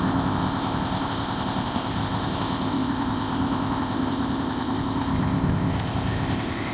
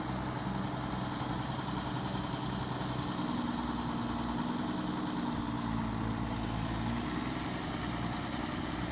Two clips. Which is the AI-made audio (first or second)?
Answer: first